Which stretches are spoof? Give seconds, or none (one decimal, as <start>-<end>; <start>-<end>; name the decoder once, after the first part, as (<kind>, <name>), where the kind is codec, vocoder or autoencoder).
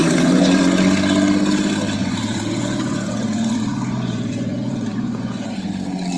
0.0-0.6 (vocoder, Vocos); 2.0-5.7